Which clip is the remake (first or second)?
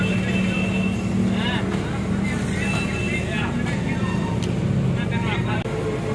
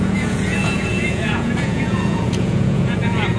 second